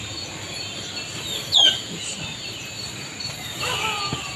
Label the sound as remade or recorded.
recorded